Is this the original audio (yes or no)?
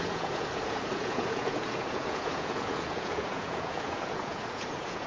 no